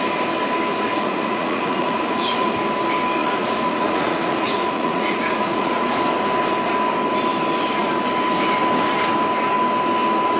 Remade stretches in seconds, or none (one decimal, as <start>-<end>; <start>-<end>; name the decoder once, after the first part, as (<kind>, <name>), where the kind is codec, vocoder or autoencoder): 0.9-2.5 (vocoder, Vocos); 3.2-6.0